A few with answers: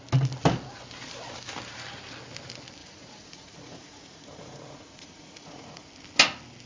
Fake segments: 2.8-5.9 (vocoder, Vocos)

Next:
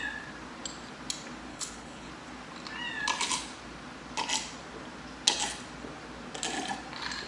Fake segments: 1.5-2.1 (codec, HILCodec)

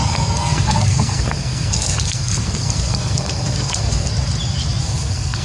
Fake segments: 0.0-4.1 (codec, SNAC); 4.8-5.4

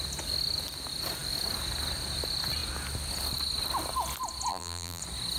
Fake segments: 4.5-5.0 (vocoder, BigVGAN v2)

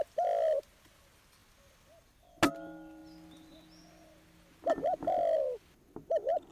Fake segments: none